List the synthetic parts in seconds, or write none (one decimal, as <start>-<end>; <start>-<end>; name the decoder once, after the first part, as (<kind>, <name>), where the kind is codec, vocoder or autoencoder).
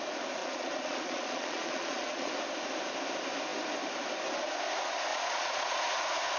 0.4-2.3 (vocoder, Vocos); 5.1-5.8